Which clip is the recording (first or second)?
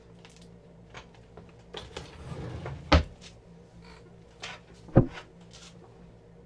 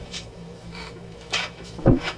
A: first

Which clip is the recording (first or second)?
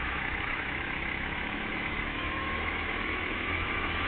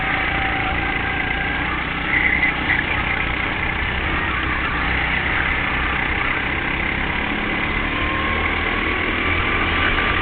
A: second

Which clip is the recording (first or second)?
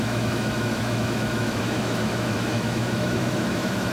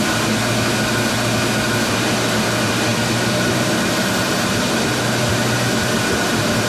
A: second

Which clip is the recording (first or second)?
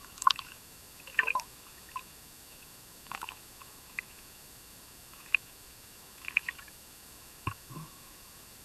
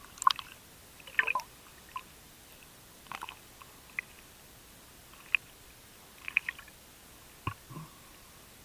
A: second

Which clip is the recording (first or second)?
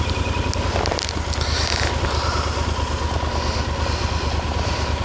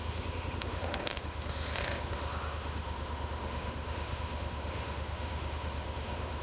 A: first